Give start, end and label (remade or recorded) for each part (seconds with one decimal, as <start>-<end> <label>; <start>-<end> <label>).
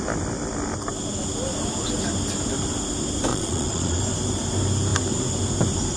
0.0-3.3 recorded; 3.3-4.0 remade; 4.0-6.0 recorded